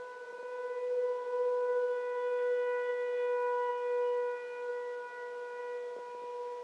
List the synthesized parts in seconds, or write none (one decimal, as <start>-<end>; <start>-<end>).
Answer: none